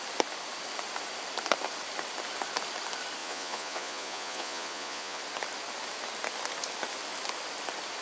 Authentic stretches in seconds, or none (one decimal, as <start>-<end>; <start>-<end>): 0.0-3.2; 5.2-8.0